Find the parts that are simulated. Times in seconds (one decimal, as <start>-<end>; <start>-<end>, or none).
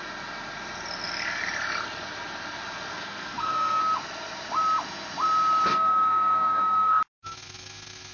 2.9-3.8; 5.7-7.0